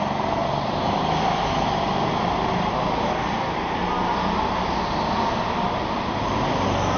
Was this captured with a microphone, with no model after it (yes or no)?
yes